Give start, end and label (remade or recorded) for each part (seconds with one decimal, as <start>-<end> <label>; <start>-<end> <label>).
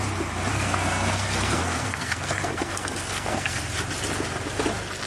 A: 0.0-0.5 recorded; 0.5-3.6 remade; 3.6-5.1 recorded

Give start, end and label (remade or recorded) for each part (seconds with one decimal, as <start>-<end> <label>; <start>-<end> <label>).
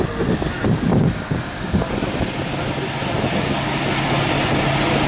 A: 0.0-5.1 recorded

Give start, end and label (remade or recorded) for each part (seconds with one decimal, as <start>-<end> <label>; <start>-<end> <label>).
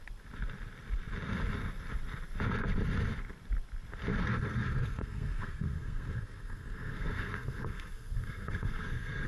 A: 0.0-4.2 recorded; 4.2-9.3 remade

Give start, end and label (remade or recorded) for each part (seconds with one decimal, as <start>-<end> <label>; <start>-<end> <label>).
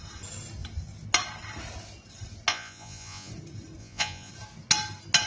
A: 0.0-2.5 recorded; 2.5-3.3 remade; 3.3-3.8 recorded; 3.8-4.3 remade; 4.3-5.3 recorded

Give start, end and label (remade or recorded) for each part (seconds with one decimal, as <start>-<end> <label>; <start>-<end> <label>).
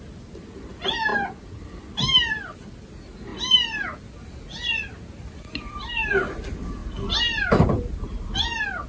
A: 0.0-8.9 recorded